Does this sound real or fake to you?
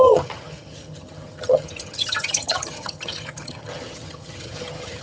fake